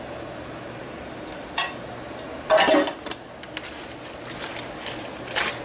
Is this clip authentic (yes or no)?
yes